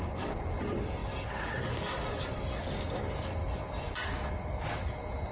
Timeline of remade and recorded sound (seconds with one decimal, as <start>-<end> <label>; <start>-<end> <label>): 0.0-5.3 recorded